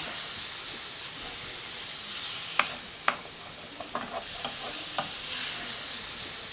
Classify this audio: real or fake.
real